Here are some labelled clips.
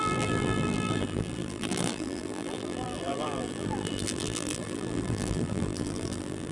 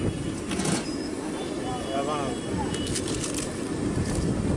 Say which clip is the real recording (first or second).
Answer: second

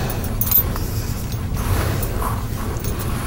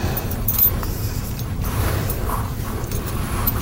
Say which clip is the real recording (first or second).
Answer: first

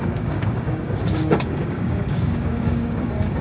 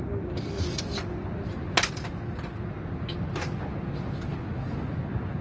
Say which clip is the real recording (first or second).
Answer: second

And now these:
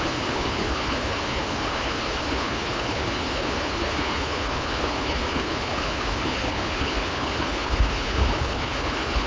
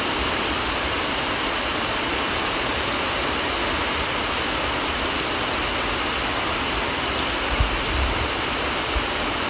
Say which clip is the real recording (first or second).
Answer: second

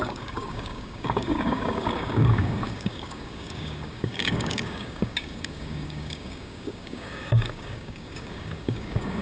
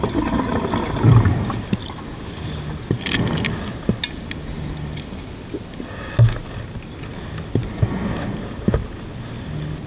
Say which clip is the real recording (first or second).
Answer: second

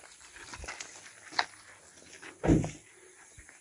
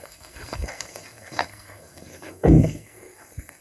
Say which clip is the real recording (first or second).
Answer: first